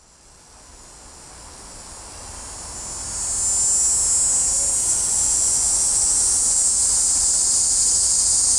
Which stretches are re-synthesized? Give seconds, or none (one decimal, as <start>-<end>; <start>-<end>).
4.9-6.3